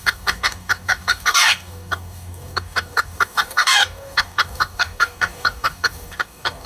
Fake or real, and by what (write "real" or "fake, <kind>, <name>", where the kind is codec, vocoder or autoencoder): fake, codec, DAC